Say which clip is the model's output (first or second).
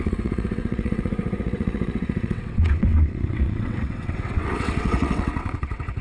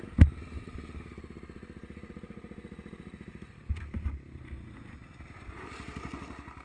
first